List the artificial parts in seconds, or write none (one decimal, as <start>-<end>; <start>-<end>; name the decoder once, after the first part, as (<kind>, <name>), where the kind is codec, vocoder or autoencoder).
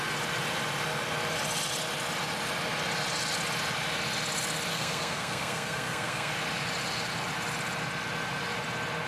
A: 4.7-6.3 (codec, SNAC)